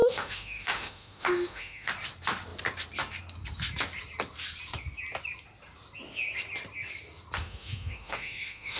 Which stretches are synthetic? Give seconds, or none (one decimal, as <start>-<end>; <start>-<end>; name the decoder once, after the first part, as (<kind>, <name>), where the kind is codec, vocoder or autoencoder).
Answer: 0.0-1.9 (autoencoder, DAC-VAE); 7.4-8.8